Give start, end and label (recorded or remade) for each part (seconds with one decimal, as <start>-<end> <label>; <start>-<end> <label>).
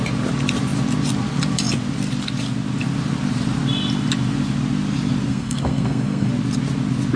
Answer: 0.0-5.3 recorded; 5.3-6.3 remade; 6.3-7.2 recorded